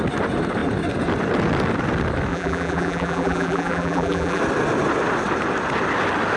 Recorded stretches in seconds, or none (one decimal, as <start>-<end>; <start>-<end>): 0.0-2.3; 4.4-6.4